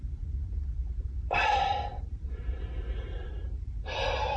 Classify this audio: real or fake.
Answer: fake